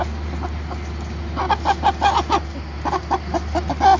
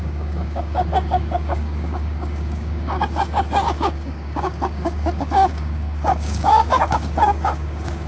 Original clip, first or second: first